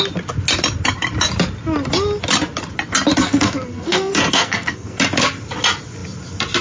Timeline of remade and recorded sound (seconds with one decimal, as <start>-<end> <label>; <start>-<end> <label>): 0.0-3.2 recorded; 3.2-5.0 remade; 5.0-6.6 recorded